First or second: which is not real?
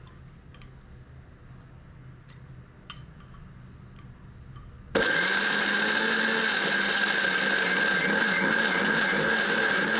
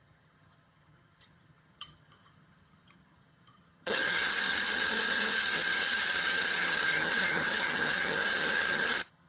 second